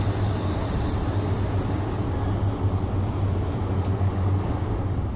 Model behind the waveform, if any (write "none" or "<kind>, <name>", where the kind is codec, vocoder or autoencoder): none